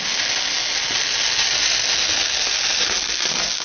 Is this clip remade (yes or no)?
no